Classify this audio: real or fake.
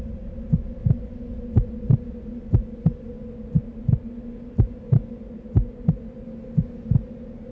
real